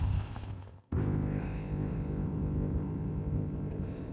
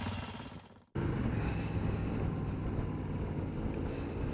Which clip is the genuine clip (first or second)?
second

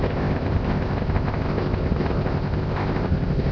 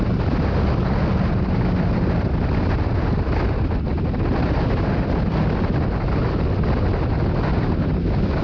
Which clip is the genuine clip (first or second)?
second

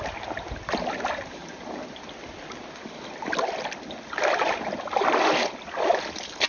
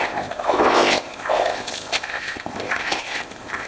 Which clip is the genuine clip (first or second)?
first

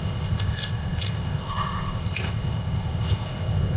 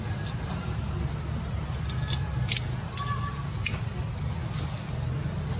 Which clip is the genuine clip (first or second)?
second